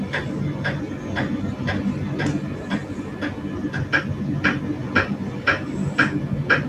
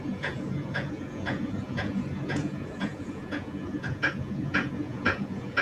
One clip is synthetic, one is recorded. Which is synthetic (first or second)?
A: second